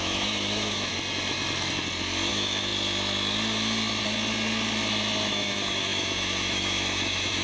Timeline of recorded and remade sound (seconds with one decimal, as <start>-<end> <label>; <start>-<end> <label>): 0.0-0.9 remade; 0.9-2.3 recorded; 2.3-2.7 remade; 2.7-5.3 recorded; 5.3-7.4 remade